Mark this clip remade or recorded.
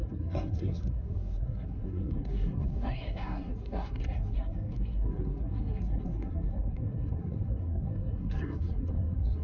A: remade